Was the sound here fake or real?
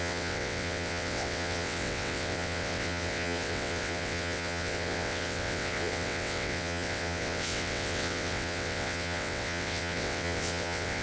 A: fake